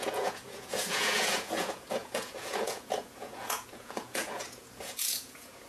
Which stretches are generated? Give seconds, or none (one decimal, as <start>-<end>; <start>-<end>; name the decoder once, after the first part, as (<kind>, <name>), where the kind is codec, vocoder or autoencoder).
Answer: 0.0-5.7 (vocoder, Vocos)